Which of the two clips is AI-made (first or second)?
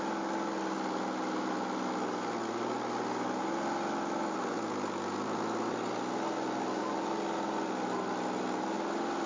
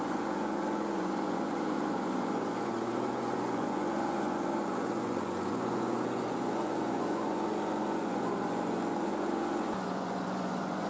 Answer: second